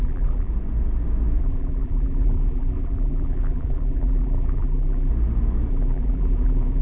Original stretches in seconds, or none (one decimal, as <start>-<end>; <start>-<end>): 0.5-1.4; 5.1-5.7